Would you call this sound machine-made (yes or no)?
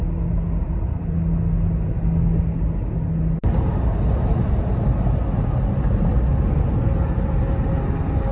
no